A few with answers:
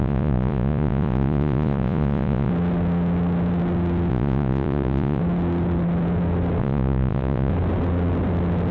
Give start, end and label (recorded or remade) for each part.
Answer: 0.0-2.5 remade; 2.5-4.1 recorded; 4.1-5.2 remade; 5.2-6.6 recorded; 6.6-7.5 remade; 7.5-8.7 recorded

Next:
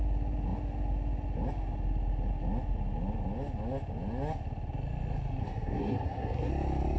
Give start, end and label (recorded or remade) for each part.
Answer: 0.0-5.4 recorded; 5.4-6.5 remade; 6.5-7.0 recorded

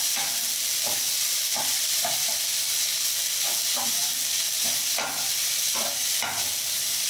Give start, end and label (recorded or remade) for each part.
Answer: 0.0-7.1 recorded

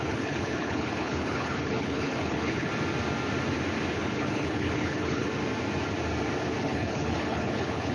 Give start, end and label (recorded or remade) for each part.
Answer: 0.0-2.7 remade; 2.7-3.9 recorded; 3.9-5.3 remade; 5.3-6.6 recorded; 6.6-7.9 remade

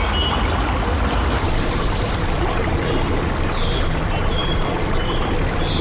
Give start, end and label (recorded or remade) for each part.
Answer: 0.0-5.8 recorded